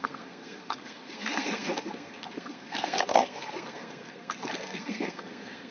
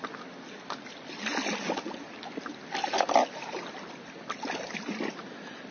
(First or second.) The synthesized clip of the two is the first